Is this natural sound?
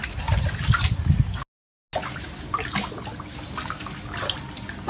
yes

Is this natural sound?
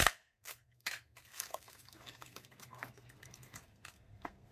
no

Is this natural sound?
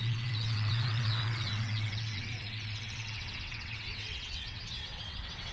no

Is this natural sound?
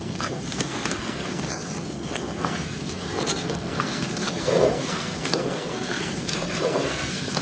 no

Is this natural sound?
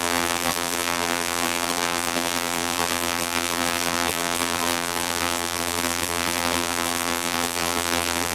no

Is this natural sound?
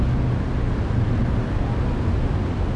yes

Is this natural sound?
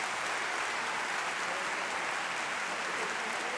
yes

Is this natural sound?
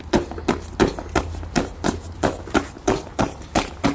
yes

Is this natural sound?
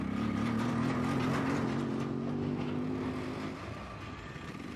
yes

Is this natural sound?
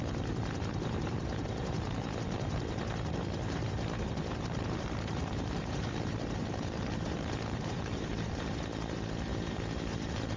no